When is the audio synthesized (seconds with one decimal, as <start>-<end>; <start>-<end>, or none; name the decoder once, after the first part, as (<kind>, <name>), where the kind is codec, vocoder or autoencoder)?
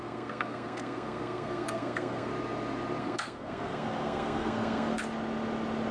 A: 0.0-2.3 (codec, SNAC); 3.0-5.0